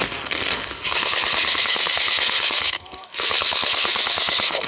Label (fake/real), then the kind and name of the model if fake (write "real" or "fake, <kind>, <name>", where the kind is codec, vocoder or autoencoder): fake, codec, SNAC